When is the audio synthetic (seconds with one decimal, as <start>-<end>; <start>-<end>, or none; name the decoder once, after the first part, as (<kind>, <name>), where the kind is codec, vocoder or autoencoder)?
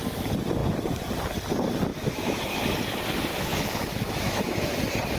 1.9-2.4 (autoencoder, DAC-VAE); 3.3-4.7